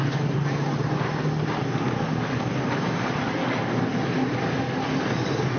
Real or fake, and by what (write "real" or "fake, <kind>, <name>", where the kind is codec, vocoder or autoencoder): real